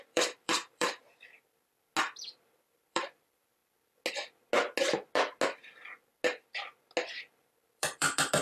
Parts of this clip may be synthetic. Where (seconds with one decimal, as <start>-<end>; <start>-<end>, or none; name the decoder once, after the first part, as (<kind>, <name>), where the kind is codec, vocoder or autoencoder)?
0.0-1.7 (vocoder, BigVGAN v2); 2.2-3.6; 7.3-8.4

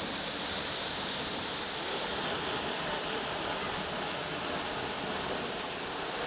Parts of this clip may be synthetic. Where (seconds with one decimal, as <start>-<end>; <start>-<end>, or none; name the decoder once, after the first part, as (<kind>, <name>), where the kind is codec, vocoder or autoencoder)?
0.0-2.1 (vocoder, BigVGAN v2)

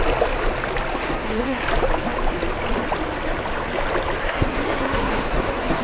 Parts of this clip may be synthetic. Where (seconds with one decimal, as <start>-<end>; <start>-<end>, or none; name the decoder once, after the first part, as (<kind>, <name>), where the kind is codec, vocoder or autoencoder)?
0.9-1.6 (codec, SNAC); 4.2-5.8

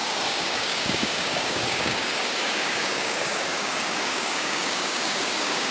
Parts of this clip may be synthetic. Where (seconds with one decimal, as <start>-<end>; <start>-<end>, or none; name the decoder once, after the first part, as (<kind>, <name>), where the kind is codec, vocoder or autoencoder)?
0.0-5.7 (codec, DAC)